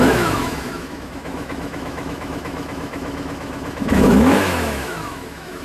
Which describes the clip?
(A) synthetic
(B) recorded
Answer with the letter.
A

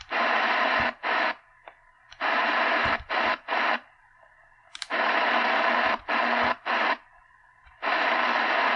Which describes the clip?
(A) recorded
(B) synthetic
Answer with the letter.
B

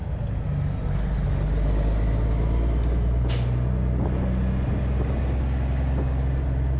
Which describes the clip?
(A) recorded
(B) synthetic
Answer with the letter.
A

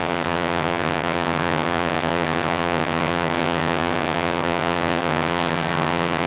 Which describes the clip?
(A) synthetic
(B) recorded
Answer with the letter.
A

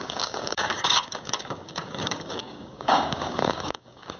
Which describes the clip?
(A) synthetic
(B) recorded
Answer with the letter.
A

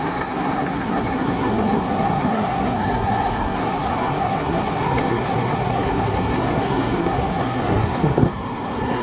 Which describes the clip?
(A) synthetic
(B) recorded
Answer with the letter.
A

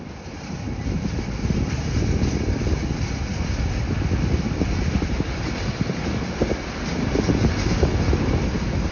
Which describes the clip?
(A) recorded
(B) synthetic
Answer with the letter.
A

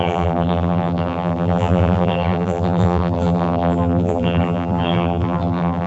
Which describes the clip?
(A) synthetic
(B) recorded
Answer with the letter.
A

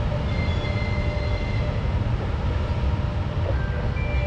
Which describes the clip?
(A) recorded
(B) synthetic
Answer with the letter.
A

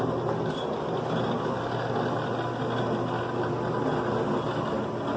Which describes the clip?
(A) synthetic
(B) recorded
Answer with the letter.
B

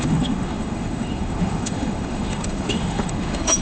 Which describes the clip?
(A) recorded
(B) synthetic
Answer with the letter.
B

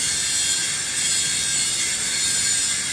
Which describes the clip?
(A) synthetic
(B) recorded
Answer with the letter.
B